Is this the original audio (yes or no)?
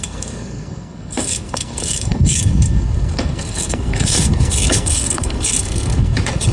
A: no